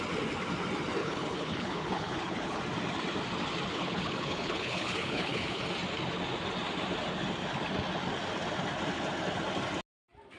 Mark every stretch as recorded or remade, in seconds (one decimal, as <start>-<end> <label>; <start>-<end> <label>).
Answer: 0.0-1.0 recorded; 1.0-2.6 remade; 2.6-3.7 recorded; 3.7-5.6 remade; 5.6-10.4 recorded